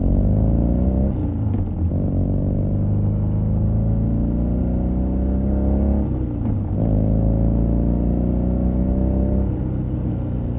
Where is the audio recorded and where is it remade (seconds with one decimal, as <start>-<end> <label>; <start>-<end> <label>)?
0.0-10.6 recorded